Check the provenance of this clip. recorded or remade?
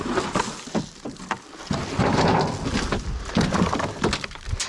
recorded